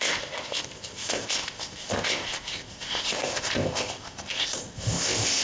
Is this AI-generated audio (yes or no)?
yes